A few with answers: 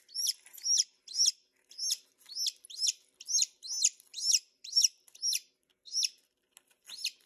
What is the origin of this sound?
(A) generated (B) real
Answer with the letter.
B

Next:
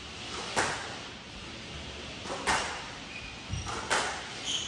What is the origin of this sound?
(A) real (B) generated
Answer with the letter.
A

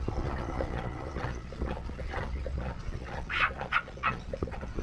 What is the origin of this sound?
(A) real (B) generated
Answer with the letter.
B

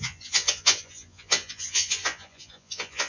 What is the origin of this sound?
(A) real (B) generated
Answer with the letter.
B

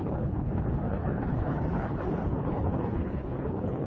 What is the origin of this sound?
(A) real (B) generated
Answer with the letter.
B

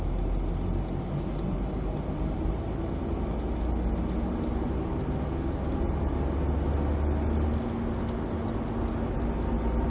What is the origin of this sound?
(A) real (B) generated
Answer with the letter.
A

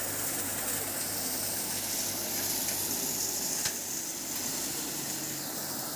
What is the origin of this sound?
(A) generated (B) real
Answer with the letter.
B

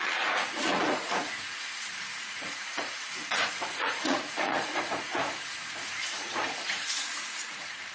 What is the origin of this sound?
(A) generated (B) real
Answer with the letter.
A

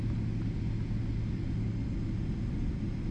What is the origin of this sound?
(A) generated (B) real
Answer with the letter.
B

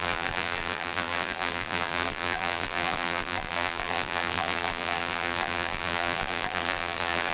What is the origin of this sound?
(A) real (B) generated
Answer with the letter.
B